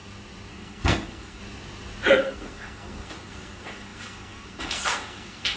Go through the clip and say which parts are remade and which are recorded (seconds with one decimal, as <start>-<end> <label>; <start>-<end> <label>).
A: 0.0-0.5 recorded; 0.5-1.4 remade; 1.4-2.1 recorded; 2.1-5.6 remade